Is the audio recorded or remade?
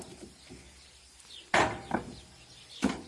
recorded